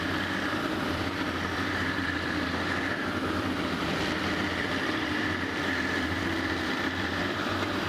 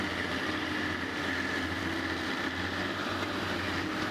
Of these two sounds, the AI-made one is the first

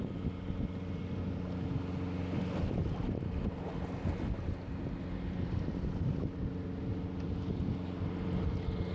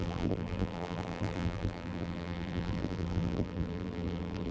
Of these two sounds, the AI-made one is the second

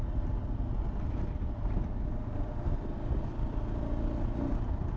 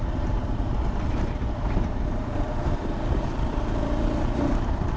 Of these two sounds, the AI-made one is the second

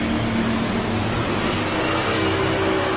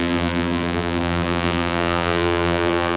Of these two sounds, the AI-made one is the second